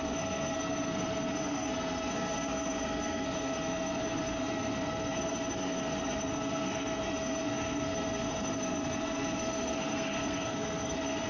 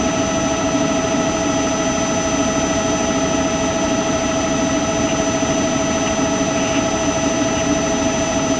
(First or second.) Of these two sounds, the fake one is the first